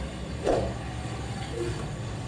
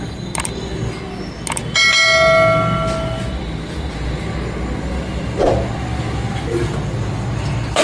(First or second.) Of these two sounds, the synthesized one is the first